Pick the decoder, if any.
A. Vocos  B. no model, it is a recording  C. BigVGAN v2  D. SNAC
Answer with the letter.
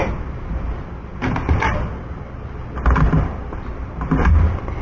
B